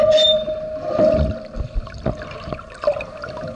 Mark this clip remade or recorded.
recorded